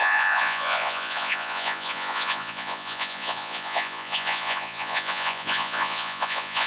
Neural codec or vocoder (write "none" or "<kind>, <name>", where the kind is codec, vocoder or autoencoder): vocoder, Vocos